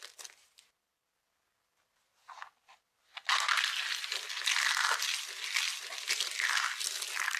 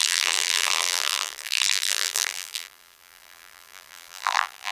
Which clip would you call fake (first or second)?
second